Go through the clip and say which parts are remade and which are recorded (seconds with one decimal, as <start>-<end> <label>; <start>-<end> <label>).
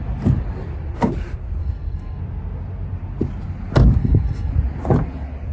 0.0-1.6 recorded; 1.6-2.2 remade; 2.2-4.0 recorded; 4.0-4.5 remade; 4.5-5.5 recorded